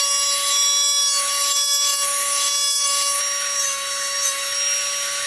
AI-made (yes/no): yes